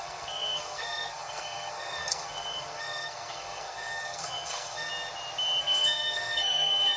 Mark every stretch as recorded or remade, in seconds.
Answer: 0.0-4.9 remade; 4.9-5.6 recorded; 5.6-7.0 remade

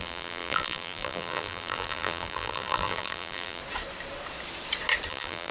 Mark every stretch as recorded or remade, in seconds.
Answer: 0.0-3.6 remade; 3.6-5.1 recorded; 5.1-5.5 remade

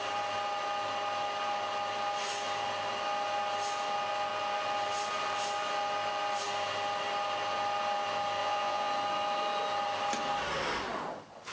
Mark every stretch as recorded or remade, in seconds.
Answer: 0.0-8.4 recorded; 8.4-8.9 remade; 8.9-11.5 recorded

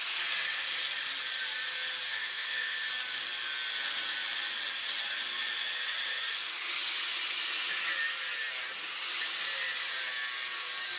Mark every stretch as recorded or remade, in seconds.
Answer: 0.0-2.1 recorded; 2.1-2.9 remade; 2.9-11.0 recorded

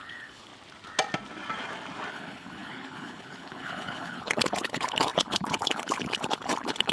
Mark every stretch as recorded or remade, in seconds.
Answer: 0.0-0.5 remade; 0.5-2.1 recorded; 2.1-6.9 remade

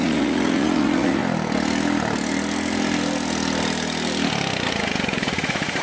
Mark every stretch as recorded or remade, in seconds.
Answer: 0.0-1.2 remade; 1.2-4.7 recorded; 4.7-5.8 remade

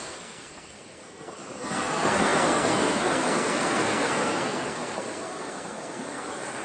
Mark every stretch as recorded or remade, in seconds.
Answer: 0.0-6.6 remade

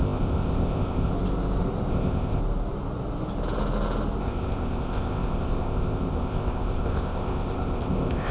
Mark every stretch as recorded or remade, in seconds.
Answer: 0.0-1.1 remade; 1.1-1.9 recorded; 1.9-2.4 remade; 2.4-4.2 recorded; 4.2-8.3 remade